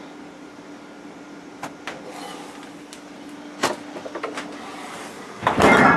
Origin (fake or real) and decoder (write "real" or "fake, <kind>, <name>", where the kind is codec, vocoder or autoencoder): real